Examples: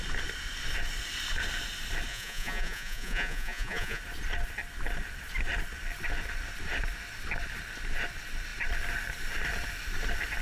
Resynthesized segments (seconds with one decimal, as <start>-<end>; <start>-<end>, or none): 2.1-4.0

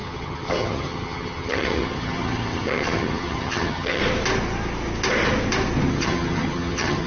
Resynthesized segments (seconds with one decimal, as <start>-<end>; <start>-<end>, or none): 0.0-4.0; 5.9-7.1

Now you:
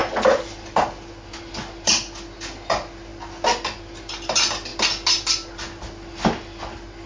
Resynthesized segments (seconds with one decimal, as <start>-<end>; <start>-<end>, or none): none

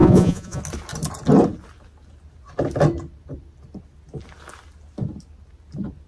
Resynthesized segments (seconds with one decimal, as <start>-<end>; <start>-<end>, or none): 0.0-0.6

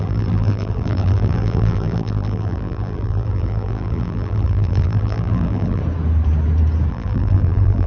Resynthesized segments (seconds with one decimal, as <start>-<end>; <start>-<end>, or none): 0.0-5.8; 6.9-7.9

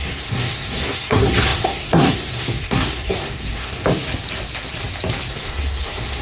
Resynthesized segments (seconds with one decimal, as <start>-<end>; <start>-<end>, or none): 0.0-3.8; 5.3-6.2